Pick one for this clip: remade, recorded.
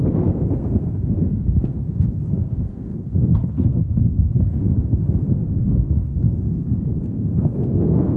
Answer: remade